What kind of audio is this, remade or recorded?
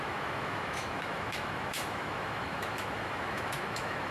remade